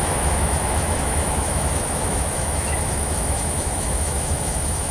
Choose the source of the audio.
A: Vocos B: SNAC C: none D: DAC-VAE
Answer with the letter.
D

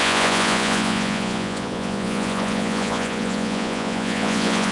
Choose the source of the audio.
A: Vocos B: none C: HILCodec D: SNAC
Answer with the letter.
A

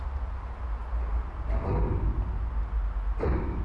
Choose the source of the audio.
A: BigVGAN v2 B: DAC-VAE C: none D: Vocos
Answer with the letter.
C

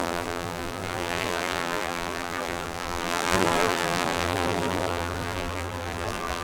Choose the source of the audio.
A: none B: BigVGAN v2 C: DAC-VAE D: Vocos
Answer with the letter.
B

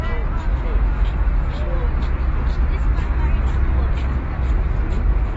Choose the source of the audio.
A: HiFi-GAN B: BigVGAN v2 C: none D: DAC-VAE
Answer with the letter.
C